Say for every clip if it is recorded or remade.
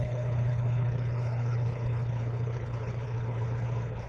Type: remade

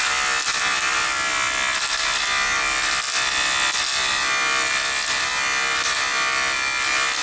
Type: recorded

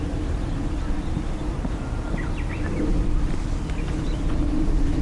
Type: recorded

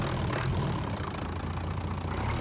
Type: recorded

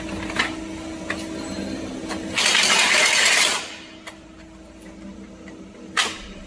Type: recorded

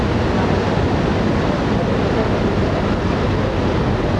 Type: recorded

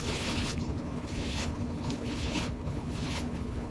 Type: remade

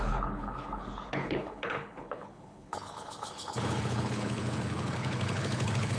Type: remade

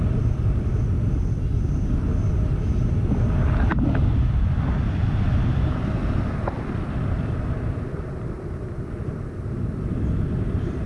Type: recorded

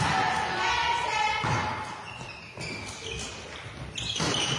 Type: recorded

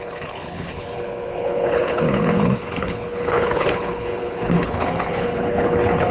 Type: remade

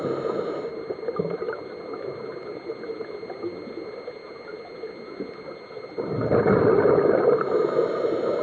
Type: recorded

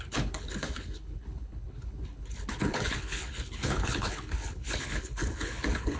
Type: remade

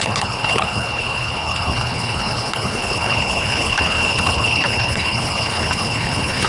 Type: remade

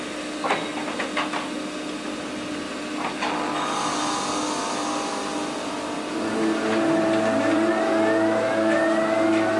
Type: recorded